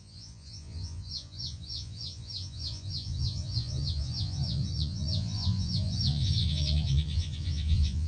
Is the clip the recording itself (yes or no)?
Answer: no